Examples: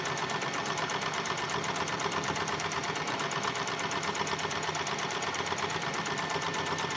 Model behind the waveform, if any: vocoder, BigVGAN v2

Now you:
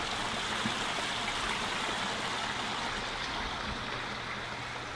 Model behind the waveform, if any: none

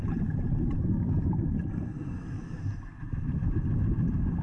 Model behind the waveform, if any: none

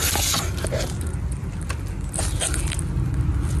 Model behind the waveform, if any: none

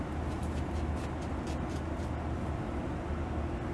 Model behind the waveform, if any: none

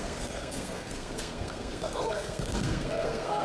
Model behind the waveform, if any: codec, SNAC